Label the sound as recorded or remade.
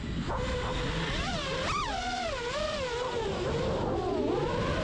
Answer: recorded